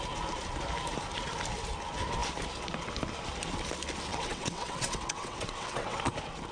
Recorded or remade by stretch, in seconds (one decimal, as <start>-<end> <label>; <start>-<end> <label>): 0.0-4.1 recorded; 4.1-6.0 remade; 6.0-6.5 recorded